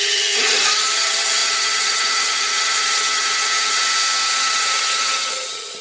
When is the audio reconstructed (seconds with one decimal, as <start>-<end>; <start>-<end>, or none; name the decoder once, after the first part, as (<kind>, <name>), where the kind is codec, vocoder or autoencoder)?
0.0-3.8 (vocoder, HiFi-GAN); 4.4-5.8

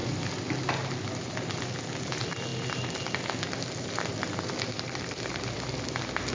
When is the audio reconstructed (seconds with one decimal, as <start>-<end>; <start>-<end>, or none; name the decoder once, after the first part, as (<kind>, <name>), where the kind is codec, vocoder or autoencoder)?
none

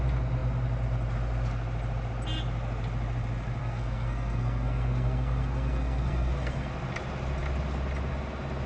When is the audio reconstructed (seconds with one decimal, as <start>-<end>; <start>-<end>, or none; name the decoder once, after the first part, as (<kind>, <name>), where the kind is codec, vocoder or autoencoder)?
3.6-6.7 (codec, SNAC)

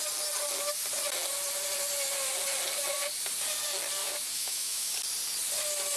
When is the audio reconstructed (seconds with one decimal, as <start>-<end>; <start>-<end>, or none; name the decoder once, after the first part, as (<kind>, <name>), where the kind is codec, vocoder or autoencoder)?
4.0-4.9 (autoencoder, DAC-VAE)

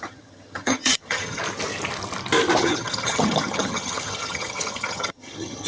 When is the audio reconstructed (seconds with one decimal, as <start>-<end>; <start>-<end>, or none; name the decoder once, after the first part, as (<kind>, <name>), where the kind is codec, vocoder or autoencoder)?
0.0-1.4 (vocoder, HiFi-GAN); 2.6-5.7

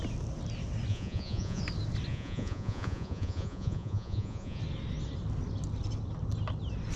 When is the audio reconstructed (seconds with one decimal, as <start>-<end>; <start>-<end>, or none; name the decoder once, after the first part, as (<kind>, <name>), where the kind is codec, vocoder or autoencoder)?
0.9-1.6 (vocoder, Vocos); 2.1-4.6